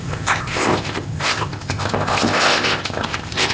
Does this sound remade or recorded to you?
remade